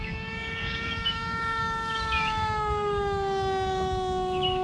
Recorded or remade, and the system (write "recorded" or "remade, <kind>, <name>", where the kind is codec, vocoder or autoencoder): remade, codec, DAC